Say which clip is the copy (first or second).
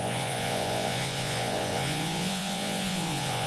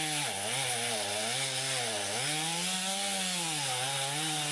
first